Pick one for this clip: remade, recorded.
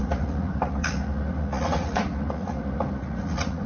remade